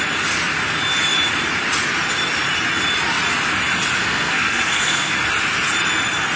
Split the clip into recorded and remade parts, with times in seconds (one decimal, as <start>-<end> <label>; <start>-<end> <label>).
0.0-4.0 recorded; 4.0-5.1 remade; 5.1-6.4 recorded